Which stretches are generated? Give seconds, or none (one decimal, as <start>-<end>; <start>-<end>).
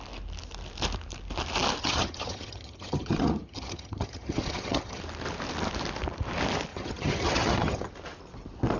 1.8-5.0; 6.7-7.9